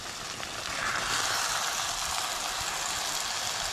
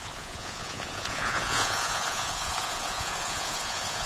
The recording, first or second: first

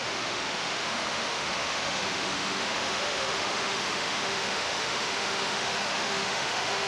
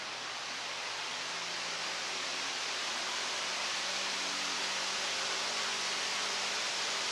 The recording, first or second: second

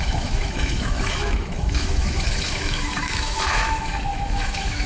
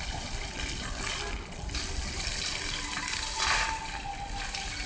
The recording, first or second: second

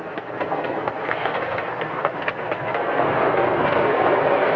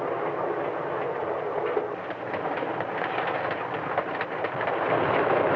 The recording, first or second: second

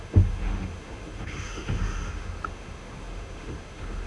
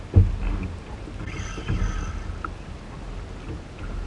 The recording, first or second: second